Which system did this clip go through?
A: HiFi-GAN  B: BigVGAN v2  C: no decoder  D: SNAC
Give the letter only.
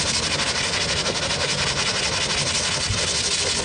C